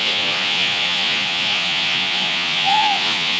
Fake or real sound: fake